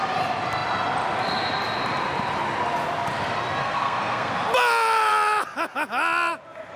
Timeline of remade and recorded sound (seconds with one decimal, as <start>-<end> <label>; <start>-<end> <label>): 0.0-3.6 recorded; 3.6-4.3 remade; 4.3-6.8 recorded